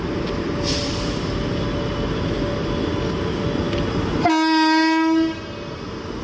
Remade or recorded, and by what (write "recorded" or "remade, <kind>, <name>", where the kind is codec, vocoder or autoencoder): recorded